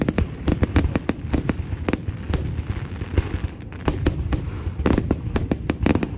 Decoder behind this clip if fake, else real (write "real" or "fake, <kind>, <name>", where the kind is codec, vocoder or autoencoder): real